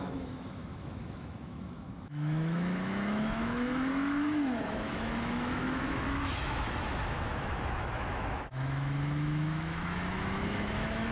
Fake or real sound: fake